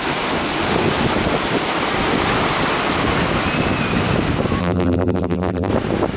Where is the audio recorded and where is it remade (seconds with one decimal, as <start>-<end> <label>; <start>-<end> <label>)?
0.0-4.6 recorded; 4.6-5.7 remade; 5.7-6.2 recorded